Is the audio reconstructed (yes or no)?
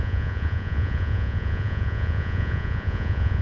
yes